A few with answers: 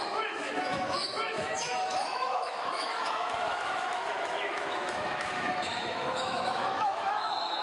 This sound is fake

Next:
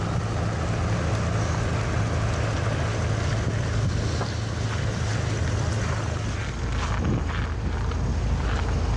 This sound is real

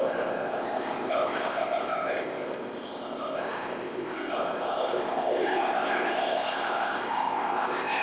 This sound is fake